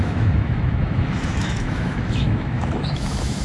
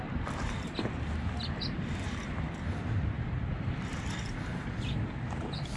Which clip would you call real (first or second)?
second